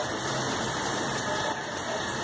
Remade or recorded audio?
remade